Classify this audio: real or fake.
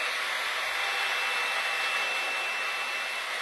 real